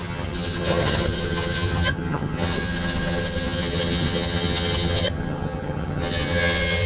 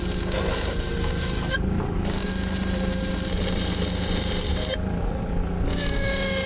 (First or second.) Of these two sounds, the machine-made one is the first